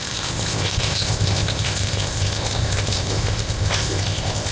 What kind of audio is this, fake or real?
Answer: fake